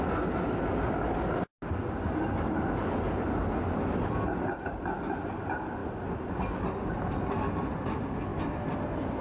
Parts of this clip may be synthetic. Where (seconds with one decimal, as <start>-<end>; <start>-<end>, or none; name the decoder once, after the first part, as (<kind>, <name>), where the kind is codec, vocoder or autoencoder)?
none